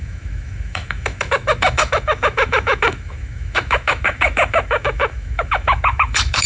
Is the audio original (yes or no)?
no